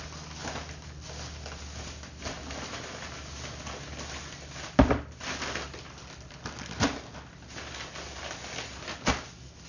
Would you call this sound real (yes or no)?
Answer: yes